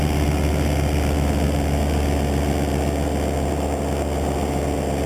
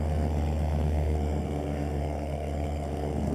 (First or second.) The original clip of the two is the first